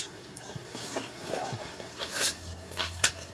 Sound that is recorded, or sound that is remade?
remade